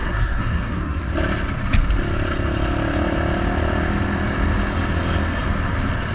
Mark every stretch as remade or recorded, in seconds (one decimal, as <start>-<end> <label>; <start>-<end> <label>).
0.0-1.1 remade; 1.1-6.1 recorded